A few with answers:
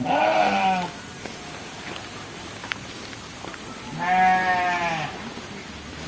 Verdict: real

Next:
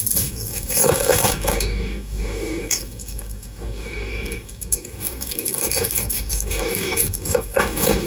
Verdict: fake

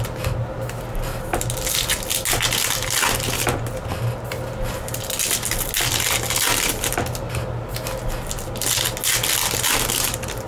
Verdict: real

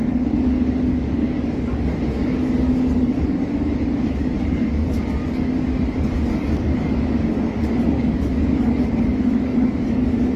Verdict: fake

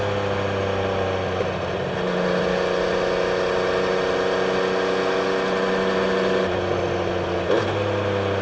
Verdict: real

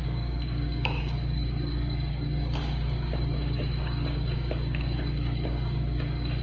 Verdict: fake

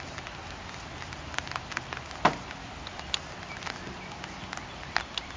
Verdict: real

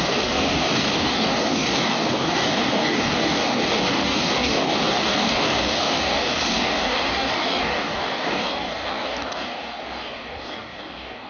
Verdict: fake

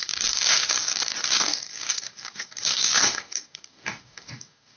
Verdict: fake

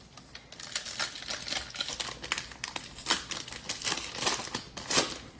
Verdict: real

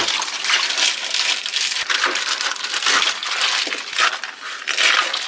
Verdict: real